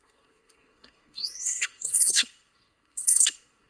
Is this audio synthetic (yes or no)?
yes